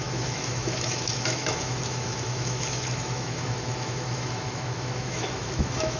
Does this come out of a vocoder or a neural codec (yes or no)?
yes